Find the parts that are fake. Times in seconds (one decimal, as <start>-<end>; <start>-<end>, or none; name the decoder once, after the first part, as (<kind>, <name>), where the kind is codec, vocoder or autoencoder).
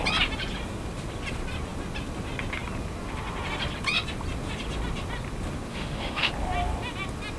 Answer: 5.7-6.3 (autoencoder, DAC-VAE)